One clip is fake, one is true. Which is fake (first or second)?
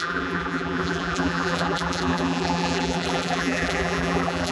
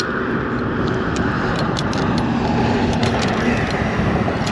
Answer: first